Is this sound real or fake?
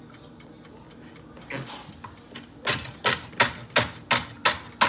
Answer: real